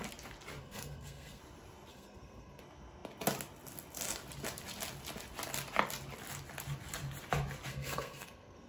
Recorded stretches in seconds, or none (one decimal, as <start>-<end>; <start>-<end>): 0.0-0.6; 1.4-1.9; 2.6-7.7